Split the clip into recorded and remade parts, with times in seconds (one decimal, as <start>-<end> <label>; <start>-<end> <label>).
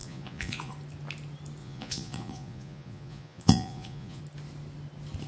0.0-0.7 remade; 0.7-1.6 recorded; 1.6-4.2 remade; 4.2-5.3 recorded